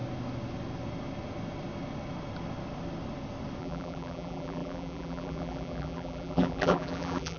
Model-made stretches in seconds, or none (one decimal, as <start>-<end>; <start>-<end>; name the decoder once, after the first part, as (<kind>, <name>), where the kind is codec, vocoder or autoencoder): 3.6-7.4 (vocoder, BigVGAN v2)